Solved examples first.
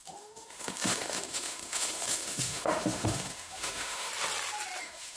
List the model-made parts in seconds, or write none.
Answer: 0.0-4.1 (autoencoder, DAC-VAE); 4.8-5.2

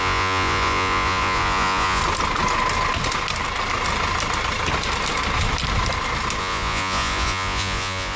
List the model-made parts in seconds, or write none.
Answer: 0.0-2.0 (vocoder, Vocos); 6.4-8.2

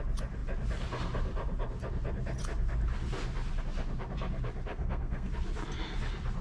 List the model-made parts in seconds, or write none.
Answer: 4.7-5.3 (codec, SNAC)

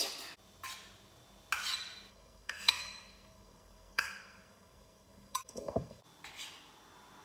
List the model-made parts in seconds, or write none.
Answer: 2.1-6.0 (codec, SNAC)

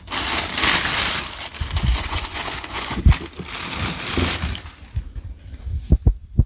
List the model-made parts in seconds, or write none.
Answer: 1.9-3.1 (vocoder, Vocos)